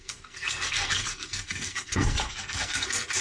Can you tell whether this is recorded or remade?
remade